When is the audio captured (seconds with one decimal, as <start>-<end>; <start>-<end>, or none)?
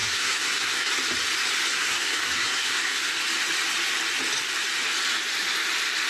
0.9-1.7; 3.1-6.1